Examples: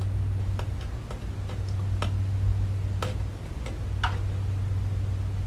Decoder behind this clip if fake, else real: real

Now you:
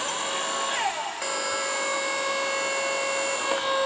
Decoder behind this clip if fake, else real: real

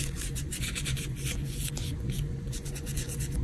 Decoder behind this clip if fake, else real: fake, vocoder, Vocos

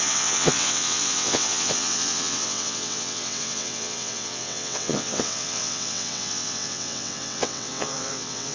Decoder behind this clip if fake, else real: fake, vocoder, WaveNeXt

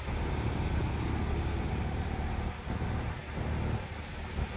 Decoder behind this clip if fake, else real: real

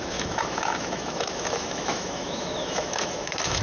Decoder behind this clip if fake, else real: fake, autoencoder, DAC-VAE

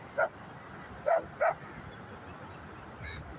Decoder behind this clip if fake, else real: real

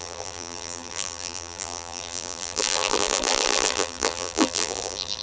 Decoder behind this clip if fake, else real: fake, vocoder, BigVGAN v2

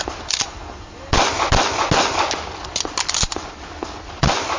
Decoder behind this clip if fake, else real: real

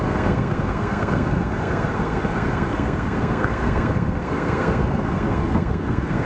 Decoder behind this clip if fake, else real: fake, codec, SNAC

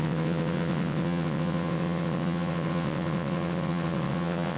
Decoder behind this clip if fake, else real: fake, vocoder, WaveNeXt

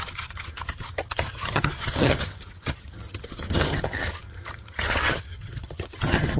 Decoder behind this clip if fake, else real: fake, vocoder, HiFi-GAN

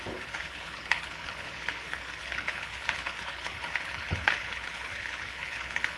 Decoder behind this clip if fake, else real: fake, codec, HILCodec